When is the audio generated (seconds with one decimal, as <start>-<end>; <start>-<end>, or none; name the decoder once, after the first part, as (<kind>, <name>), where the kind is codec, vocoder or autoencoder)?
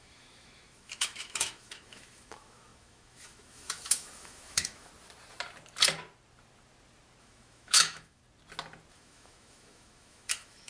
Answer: 0.0-4.9 (autoencoder, DAC-VAE); 7.2-8.2; 8.9-10.7